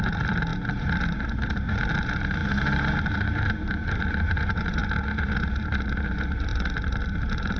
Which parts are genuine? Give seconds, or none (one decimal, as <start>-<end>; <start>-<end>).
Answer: 4.8-5.4